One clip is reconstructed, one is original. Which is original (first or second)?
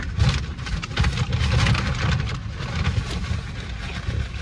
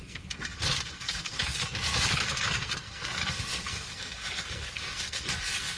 first